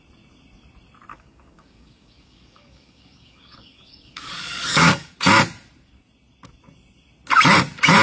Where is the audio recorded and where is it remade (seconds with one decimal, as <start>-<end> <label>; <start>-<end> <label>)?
0.0-1.1 recorded; 1.1-5.1 remade; 5.1-8.0 recorded

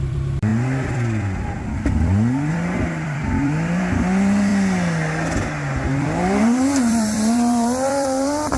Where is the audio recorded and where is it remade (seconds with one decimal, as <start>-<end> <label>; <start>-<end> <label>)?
0.0-4.5 remade; 4.5-5.9 recorded; 5.9-8.6 remade

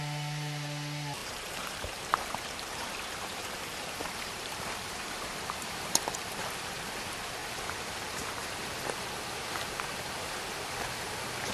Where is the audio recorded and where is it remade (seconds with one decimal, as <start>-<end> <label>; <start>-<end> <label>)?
0.0-1.2 recorded; 1.2-6.5 remade; 6.5-7.4 recorded; 7.4-8.7 remade; 8.7-11.5 recorded